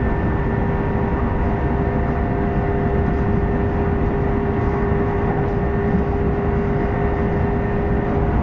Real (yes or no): yes